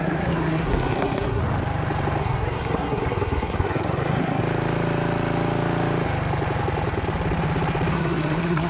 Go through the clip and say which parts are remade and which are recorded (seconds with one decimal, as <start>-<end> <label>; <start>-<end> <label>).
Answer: 0.0-1.4 remade; 1.4-2.2 recorded; 2.2-4.4 remade; 4.4-7.9 recorded; 7.9-8.7 remade